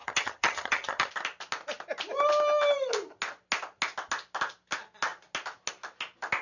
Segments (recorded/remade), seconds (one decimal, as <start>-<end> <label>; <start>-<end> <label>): 0.0-1.1 remade; 1.1-6.4 recorded